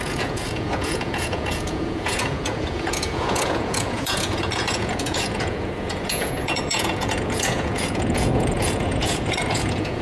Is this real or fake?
fake